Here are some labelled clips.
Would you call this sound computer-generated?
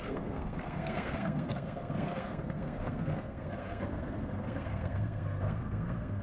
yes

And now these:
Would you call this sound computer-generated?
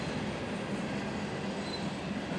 no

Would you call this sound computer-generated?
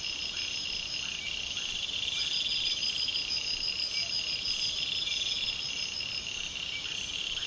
no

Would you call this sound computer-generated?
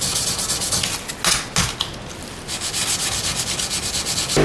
no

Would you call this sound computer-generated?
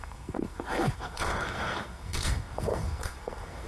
yes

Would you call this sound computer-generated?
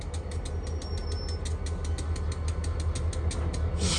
no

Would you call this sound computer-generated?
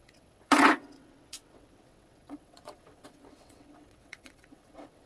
yes